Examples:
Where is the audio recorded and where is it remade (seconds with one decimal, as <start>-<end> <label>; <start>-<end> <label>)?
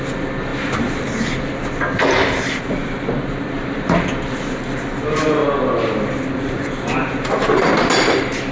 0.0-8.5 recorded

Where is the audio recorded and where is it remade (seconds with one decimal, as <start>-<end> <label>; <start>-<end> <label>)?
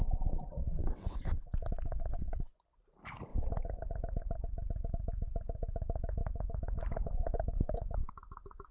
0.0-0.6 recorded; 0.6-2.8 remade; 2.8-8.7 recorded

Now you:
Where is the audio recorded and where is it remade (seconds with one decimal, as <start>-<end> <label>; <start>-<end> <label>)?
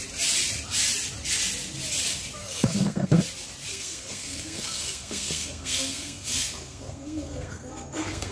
0.0-2.4 recorded; 2.4-3.2 remade; 3.2-3.7 recorded; 3.7-8.3 remade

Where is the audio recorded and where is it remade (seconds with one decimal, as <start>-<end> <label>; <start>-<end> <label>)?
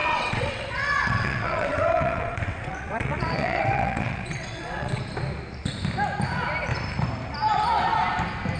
0.0-5.0 remade; 5.0-8.6 recorded